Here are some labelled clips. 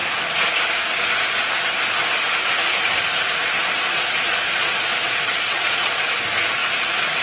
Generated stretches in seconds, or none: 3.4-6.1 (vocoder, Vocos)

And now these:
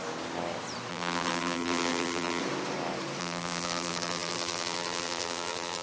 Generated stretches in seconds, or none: 0.9-2.4 (vocoder, BigVGAN v2); 3.2-5.8

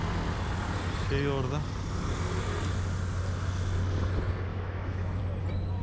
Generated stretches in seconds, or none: 4.5-5.2 (autoencoder, DAC-VAE)